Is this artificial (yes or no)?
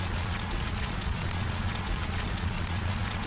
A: yes